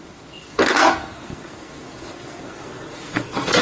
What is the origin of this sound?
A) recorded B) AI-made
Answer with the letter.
B